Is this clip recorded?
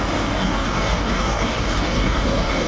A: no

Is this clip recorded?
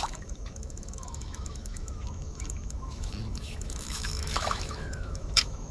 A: no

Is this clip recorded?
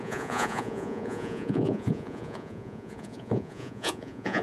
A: no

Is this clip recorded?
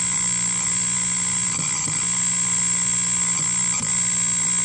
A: yes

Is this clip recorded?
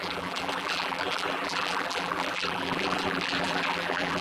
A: no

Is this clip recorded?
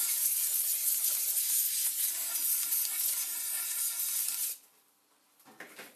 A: yes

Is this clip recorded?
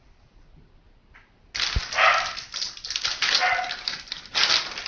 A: yes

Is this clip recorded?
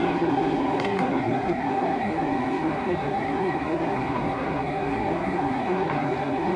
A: no